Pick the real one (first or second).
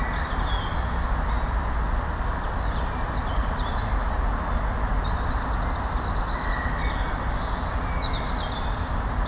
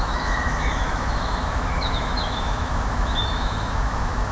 first